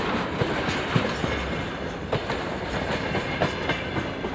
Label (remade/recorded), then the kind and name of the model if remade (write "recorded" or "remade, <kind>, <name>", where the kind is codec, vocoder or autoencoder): recorded